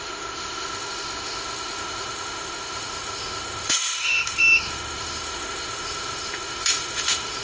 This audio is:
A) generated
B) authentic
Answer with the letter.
A